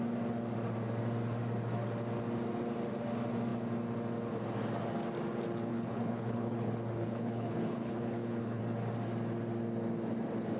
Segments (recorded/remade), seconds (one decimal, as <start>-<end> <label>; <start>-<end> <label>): 0.0-5.7 recorded; 5.7-8.6 remade; 8.6-10.6 recorded